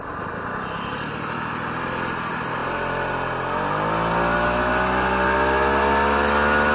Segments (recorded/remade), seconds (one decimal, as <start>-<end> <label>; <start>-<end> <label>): 0.0-6.7 recorded